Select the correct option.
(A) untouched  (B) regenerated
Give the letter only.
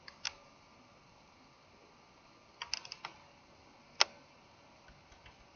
A